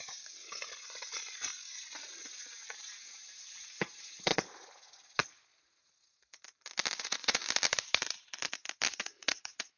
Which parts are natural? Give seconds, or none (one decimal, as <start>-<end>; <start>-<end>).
1.5-2.2; 4.3-7.0; 7.4-9.0